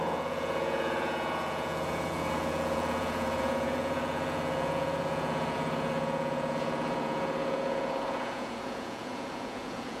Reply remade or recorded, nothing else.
remade